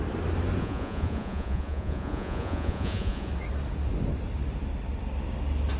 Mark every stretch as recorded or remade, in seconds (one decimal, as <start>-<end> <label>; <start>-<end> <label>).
0.0-0.6 recorded; 0.6-3.3 remade; 3.3-5.8 recorded

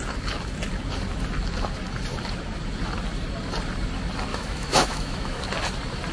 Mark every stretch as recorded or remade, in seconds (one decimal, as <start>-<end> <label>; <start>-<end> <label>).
0.0-4.3 recorded; 4.3-5.4 remade; 5.4-6.1 recorded